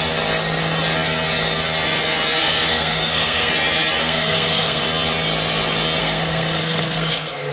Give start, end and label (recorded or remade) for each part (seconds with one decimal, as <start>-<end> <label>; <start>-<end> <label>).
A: 0.0-2.4 recorded; 2.4-3.5 remade; 3.5-4.0 recorded; 4.0-4.8 remade; 4.8-6.0 recorded; 6.0-7.5 remade